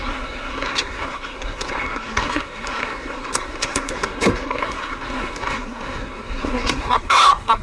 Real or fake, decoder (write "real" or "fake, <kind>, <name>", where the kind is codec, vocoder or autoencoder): fake, codec, SNAC